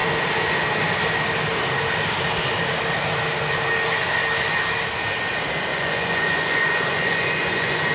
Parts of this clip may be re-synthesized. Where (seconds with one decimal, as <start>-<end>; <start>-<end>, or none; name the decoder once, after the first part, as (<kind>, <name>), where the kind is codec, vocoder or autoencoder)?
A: 5.7-7.9 (vocoder, Vocos)